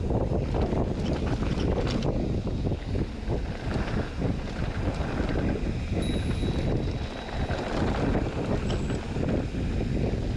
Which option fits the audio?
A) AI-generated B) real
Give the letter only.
B